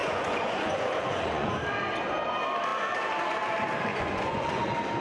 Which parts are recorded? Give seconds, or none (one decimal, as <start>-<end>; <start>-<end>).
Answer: 1.5-3.9; 4.6-5.0